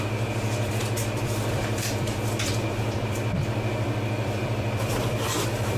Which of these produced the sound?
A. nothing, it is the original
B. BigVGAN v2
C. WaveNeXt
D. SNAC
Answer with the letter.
B